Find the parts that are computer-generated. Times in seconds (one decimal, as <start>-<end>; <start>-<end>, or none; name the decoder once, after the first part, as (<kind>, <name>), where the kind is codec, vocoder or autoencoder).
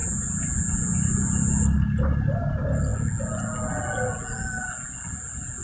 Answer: none